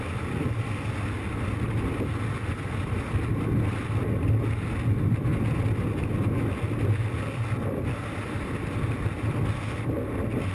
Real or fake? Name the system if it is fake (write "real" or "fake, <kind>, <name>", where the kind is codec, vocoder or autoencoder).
real